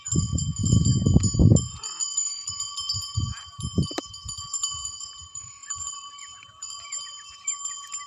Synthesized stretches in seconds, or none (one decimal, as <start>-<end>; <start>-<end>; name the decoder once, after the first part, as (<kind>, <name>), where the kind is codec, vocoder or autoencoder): 0.0-0.6 (vocoder, BigVGAN v2); 1.4-8.1